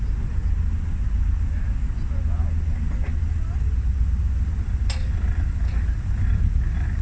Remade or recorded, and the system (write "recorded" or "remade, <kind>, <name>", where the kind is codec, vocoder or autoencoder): recorded